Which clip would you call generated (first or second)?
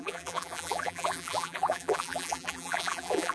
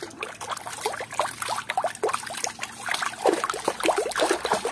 first